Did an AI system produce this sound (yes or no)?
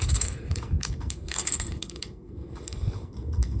yes